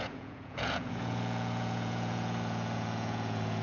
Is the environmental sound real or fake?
fake